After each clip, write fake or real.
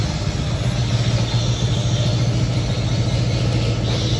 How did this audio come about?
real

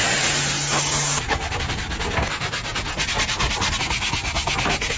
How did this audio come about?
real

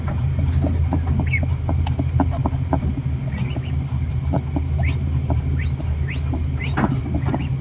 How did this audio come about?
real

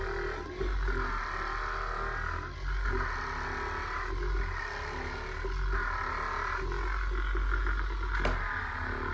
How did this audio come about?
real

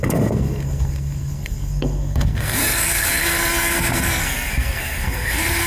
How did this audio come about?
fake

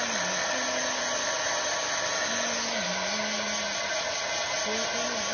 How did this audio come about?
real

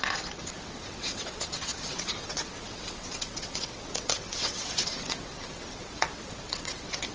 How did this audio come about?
fake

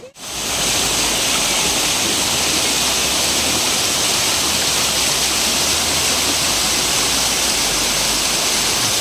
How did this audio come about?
real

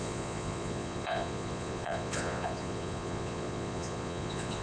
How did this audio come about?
fake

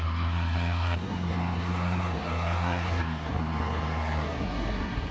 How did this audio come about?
fake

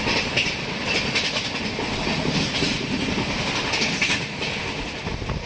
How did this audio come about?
real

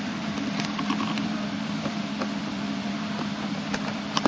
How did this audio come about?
fake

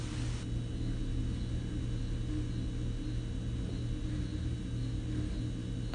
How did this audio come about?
real